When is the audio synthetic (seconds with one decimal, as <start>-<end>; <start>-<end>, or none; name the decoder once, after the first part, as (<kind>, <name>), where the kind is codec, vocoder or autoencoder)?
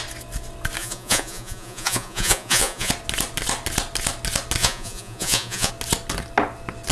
0.8-2.9 (vocoder, Vocos); 4.6-5.7